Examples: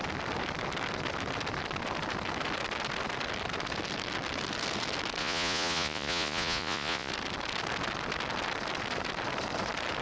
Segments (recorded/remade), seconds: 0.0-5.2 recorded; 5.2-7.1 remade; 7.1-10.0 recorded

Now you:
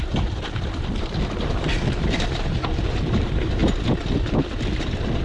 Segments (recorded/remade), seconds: 0.0-3.6 remade; 3.6-4.8 recorded; 4.8-5.2 remade

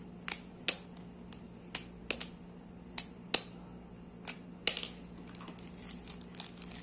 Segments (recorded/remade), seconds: 0.0-6.8 recorded